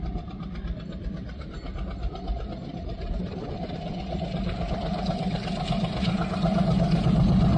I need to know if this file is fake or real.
real